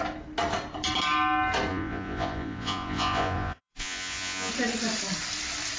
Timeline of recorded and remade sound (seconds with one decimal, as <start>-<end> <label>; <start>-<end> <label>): 0.0-1.7 recorded; 1.7-4.5 remade; 4.5-5.8 recorded